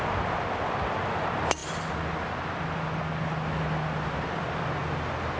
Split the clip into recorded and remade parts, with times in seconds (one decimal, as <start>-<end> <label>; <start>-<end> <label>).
0.0-5.4 recorded